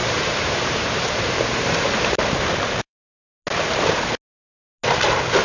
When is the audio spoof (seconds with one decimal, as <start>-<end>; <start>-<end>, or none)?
0.0-3.2